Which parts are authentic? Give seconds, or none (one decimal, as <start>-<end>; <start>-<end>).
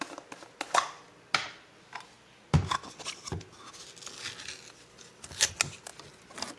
0.0-4.9; 5.5-6.6